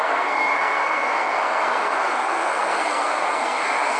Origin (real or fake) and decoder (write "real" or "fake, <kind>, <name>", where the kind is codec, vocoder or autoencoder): fake, codec, SNAC